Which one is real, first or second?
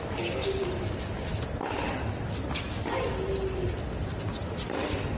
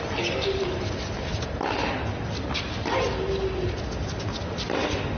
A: second